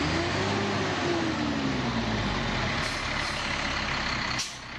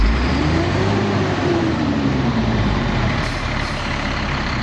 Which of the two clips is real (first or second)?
first